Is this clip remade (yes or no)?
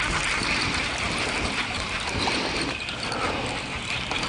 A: no